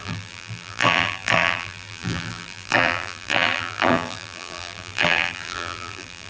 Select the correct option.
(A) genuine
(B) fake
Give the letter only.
B